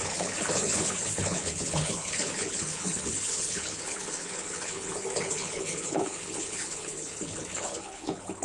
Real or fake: fake